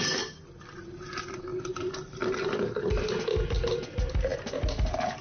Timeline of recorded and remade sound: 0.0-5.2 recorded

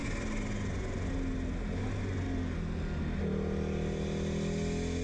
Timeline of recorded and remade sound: 0.0-5.0 recorded

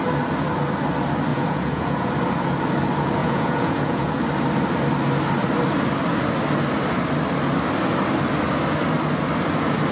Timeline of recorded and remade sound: 0.0-1.3 recorded; 1.3-2.1 remade; 2.1-3.2 recorded; 3.2-4.2 remade; 4.2-9.9 recorded

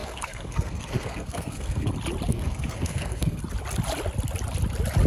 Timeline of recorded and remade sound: 0.0-1.9 remade; 1.9-2.3 recorded; 2.3-3.4 remade; 3.4-5.1 recorded

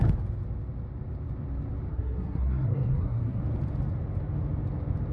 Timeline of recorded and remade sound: 0.0-1.9 recorded; 1.9-3.4 remade; 3.4-5.1 recorded

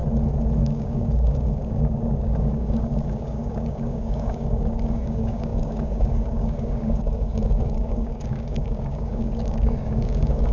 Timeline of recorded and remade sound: 0.0-0.6 recorded; 0.6-10.5 remade

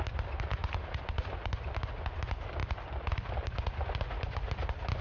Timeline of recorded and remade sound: 0.0-0.6 recorded; 0.6-1.3 remade; 1.3-2.6 recorded; 2.6-3.7 remade; 3.7-5.0 recorded

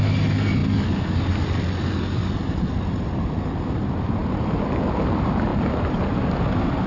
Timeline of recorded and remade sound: 0.0-6.9 recorded